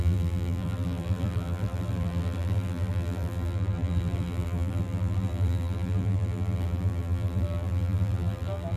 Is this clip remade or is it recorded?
remade